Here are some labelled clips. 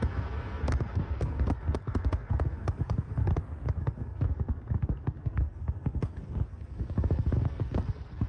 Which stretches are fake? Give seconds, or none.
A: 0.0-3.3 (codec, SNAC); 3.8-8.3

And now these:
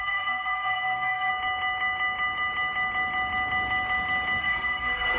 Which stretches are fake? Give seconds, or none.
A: 0.0-1.3 (codec, SNAC); 4.4-5.2

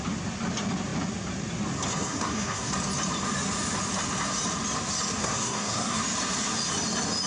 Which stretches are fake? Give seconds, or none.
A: 1.9-2.7 (codec, SNAC); 5.2-6.0